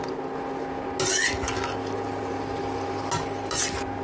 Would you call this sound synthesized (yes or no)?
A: no